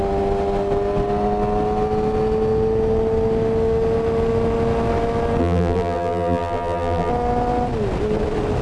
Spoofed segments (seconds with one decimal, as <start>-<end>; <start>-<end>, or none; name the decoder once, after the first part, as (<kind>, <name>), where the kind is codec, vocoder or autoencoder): 5.4-7.1 (vocoder, BigVGAN v2)